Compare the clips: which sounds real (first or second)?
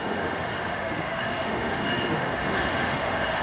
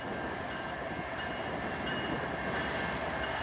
second